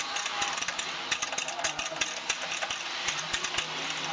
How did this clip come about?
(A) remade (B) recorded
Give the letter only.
B